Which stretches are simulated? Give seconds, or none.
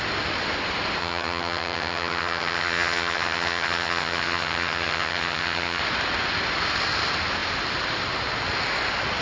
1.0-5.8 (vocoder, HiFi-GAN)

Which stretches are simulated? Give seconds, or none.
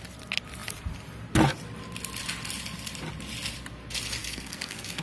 4.2-5.0 (codec, SNAC)